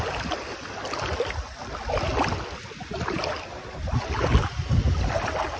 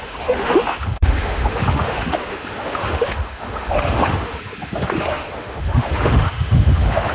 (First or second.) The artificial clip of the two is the second